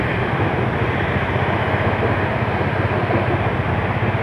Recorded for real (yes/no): yes